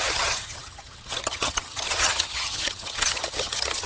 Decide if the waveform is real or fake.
fake